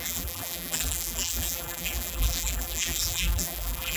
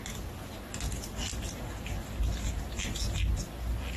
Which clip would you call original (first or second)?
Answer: second